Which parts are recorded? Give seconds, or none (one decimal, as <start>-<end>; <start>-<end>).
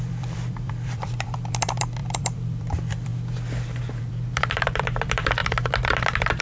3.1-4.0